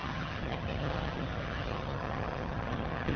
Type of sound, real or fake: fake